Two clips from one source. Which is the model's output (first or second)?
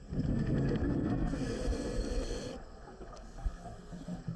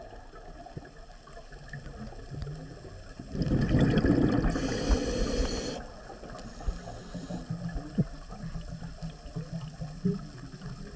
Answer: first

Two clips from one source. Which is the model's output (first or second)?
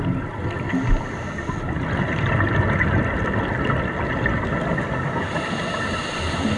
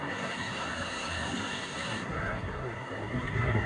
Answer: second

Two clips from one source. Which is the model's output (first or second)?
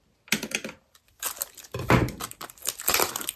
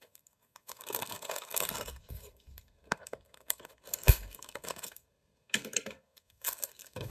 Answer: second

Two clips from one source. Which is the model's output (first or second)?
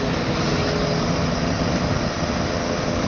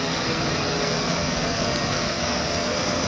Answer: second